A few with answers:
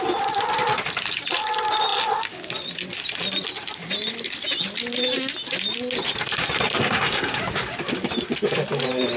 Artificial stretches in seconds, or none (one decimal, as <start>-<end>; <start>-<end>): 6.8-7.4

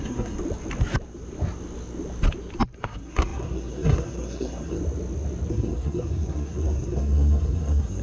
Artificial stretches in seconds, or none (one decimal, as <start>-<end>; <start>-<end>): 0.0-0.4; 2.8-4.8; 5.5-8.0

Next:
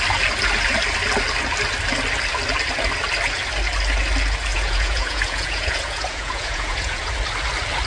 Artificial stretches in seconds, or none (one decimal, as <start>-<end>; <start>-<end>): 4.5-7.1

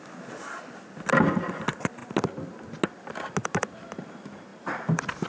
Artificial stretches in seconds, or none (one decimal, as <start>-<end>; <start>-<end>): none

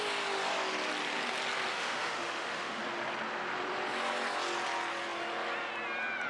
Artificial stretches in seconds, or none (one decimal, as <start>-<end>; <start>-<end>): 1.7-2.8

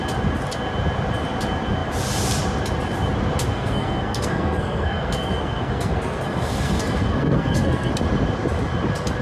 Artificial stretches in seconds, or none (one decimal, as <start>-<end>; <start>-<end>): 3.5-7.9